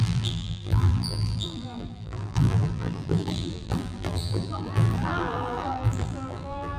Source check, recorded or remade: remade